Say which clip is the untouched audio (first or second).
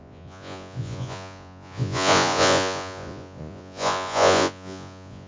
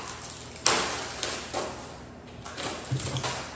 second